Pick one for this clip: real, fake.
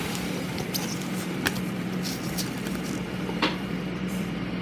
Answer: fake